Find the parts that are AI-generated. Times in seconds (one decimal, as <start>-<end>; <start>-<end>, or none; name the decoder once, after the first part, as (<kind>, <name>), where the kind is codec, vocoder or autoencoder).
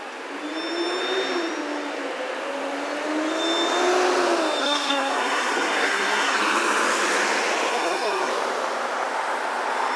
4.6-6.4 (codec, SNAC); 7.7-8.3